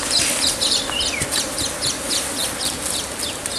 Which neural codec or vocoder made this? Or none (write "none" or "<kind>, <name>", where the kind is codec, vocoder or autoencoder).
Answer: none